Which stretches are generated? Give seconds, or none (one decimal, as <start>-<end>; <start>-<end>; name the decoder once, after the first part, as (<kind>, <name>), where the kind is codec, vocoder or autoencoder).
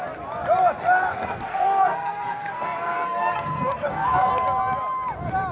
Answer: 1.1-4.3 (codec, SNAC)